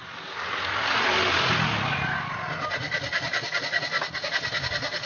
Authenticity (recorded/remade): recorded